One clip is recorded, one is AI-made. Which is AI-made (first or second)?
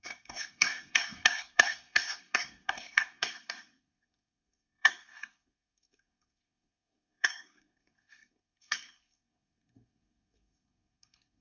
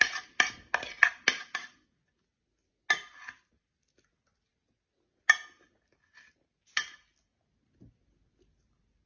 first